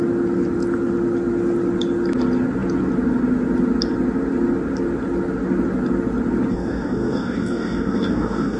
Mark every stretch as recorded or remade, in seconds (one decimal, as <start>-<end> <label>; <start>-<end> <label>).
0.0-6.5 recorded; 6.5-8.6 remade